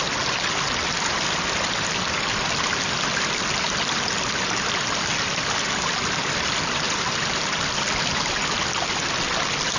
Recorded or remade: recorded